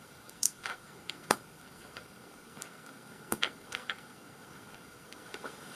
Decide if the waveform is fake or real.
fake